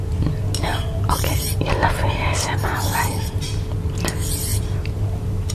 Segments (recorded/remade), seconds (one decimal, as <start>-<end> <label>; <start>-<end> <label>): 0.0-0.7 recorded; 0.7-2.6 remade; 2.6-4.5 recorded; 4.5-5.5 remade